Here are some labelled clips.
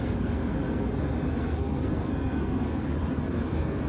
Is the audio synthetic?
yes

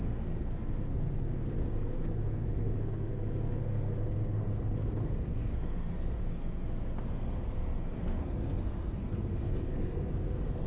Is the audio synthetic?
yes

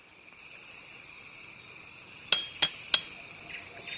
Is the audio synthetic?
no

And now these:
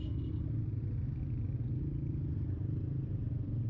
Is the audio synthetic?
no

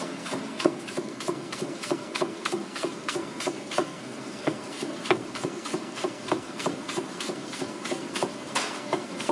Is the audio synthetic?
yes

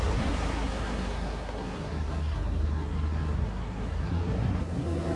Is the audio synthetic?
yes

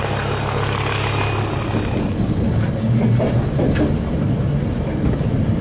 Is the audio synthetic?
no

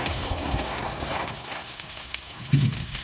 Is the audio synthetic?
yes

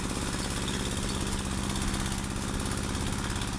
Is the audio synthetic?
no